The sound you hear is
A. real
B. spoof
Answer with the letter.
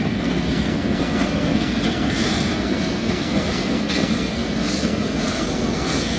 B